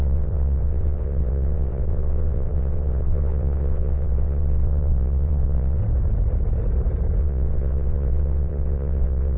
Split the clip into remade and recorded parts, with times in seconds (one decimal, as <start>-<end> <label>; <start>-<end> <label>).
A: 0.0-5.8 remade; 5.8-7.2 recorded; 7.2-9.4 remade